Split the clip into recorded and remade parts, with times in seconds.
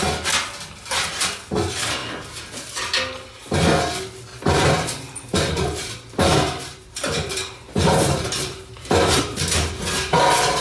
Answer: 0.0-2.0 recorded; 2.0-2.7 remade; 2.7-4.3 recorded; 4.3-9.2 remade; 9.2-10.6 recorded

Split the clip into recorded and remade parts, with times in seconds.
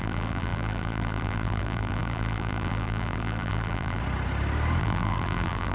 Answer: 0.0-4.0 remade; 4.0-4.8 recorded; 4.8-5.7 remade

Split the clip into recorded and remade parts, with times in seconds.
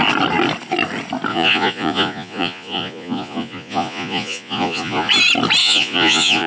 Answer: 0.0-1.3 recorded; 1.3-5.1 remade; 5.1-5.6 recorded; 5.6-6.5 remade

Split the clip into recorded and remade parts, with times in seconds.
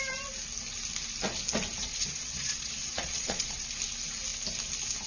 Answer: 0.0-1.8 recorded; 1.8-3.7 remade; 3.7-5.1 recorded